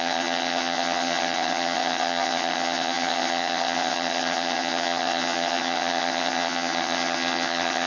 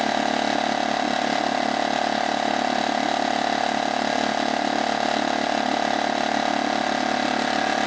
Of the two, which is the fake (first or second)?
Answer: first